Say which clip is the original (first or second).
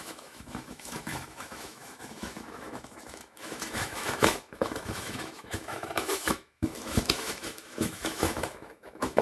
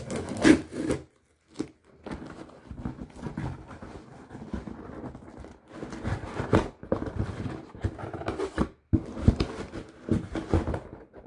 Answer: second